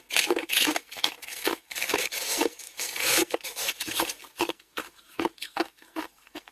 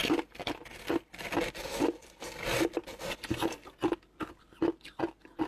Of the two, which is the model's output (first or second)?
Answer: first